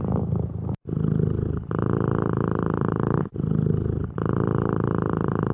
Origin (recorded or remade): remade